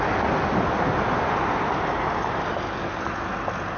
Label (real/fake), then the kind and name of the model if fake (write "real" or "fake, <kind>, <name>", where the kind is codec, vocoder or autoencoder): real